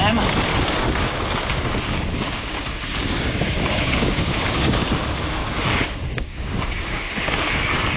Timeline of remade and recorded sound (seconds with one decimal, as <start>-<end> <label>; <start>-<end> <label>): 0.0-0.5 recorded; 0.5-5.0 remade; 5.0-5.4 recorded; 5.4-7.4 remade; 7.4-8.0 recorded